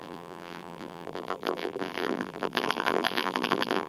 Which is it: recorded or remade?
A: remade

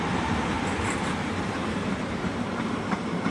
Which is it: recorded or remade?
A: remade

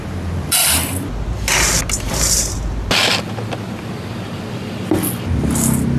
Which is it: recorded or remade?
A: recorded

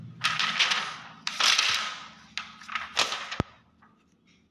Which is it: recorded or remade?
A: recorded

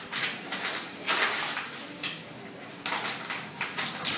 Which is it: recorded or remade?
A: recorded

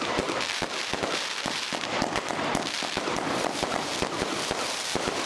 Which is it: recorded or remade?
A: remade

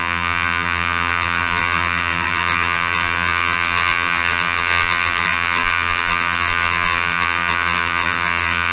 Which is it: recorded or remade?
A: remade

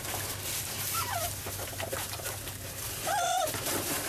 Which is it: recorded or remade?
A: remade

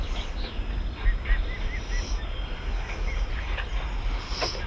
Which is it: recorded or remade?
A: recorded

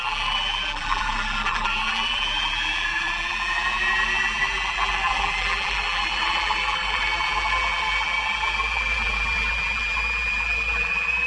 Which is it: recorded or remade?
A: remade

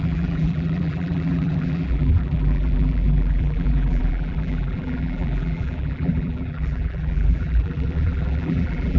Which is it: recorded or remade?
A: remade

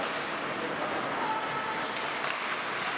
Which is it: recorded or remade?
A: recorded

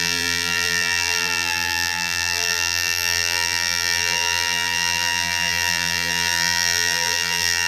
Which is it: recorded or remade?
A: remade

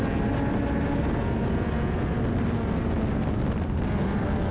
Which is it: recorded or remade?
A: recorded